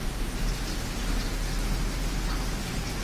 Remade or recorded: recorded